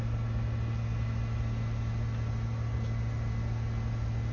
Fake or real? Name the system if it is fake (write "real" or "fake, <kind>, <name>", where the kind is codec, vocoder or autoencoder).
real